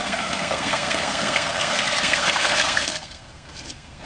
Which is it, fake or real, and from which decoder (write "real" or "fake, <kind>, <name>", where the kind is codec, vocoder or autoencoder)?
fake, codec, SNAC